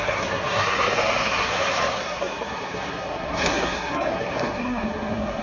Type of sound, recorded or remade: remade